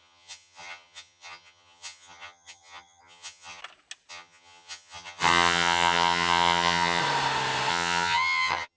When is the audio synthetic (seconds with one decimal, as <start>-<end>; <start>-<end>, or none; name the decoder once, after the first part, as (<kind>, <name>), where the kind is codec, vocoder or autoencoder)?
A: 0.0-3.6 (vocoder, HiFi-GAN); 4.1-7.0; 7.7-8.8